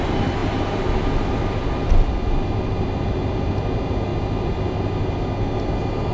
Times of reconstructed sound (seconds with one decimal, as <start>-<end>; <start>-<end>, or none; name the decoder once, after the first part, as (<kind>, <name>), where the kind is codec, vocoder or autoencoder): none